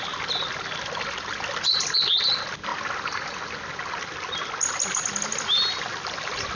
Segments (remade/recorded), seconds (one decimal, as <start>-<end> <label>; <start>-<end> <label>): 0.0-6.6 recorded

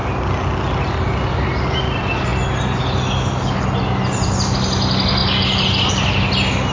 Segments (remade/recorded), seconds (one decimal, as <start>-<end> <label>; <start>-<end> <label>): 0.0-6.7 recorded

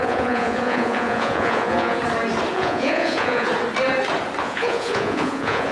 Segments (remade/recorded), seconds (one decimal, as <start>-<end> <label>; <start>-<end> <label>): 0.0-2.0 remade; 2.0-2.5 recorded; 2.5-3.5 remade; 3.5-4.4 recorded; 4.4-5.7 remade

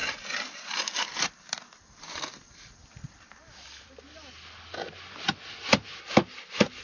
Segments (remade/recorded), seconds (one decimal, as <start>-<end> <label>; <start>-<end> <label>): 0.0-3.9 remade; 3.9-6.8 recorded

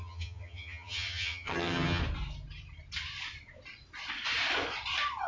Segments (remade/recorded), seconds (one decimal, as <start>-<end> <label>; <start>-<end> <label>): 0.0-2.0 remade; 2.0-5.3 recorded

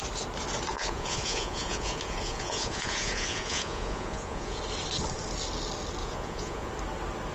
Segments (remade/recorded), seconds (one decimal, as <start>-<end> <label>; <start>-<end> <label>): 0.0-0.7 recorded; 0.7-4.6 remade; 4.6-6.0 recorded; 6.0-6.7 remade; 6.7-7.3 recorded

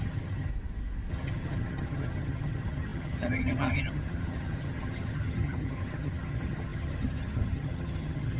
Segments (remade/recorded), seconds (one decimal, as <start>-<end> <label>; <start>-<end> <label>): 0.0-0.5 remade; 0.5-1.1 recorded; 1.1-8.4 remade

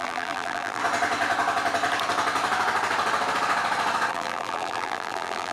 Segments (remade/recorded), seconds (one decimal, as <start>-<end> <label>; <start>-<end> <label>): 0.0-0.8 remade; 0.8-4.1 recorded; 4.1-5.5 remade